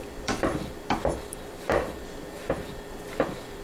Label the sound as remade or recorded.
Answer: remade